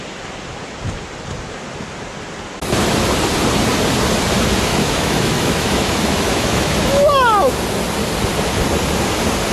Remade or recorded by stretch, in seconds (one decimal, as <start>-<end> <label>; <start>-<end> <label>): 0.0-4.7 recorded; 4.7-7.5 remade; 7.5-9.5 recorded